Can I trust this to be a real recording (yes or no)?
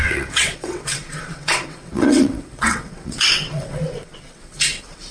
no